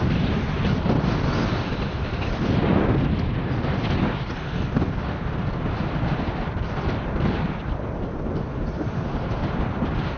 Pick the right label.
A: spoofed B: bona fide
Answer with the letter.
B